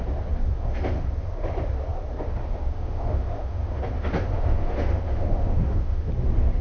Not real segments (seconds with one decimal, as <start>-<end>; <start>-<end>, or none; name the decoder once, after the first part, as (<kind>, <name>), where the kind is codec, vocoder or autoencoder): 0.5-1.1 (autoencoder, DAC-VAE); 2.4-3.8; 4.3-6.1